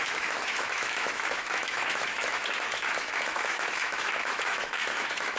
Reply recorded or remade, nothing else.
remade